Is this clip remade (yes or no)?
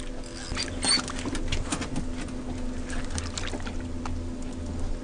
no